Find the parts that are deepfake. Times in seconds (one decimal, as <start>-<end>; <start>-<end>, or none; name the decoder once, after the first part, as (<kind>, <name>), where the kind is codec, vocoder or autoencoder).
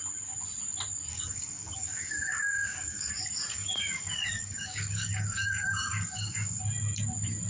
1.1-3.1 (codec, DAC); 3.5-6.6